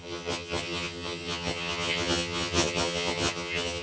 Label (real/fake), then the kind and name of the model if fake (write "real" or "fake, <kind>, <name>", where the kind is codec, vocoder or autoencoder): fake, vocoder, HiFi-GAN